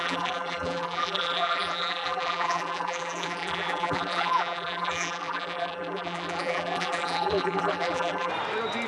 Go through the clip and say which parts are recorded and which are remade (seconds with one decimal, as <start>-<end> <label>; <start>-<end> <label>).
0.0-8.3 remade; 8.3-8.9 recorded